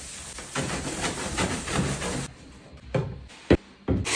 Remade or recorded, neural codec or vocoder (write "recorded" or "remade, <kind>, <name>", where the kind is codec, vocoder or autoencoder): recorded